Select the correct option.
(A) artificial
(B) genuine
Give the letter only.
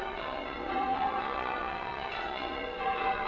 A